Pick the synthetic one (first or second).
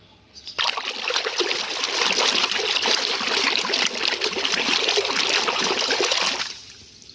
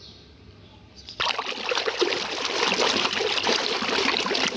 second